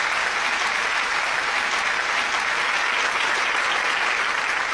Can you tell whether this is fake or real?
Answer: real